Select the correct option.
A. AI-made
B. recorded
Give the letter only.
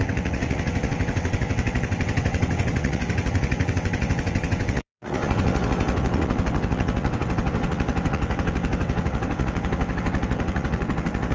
A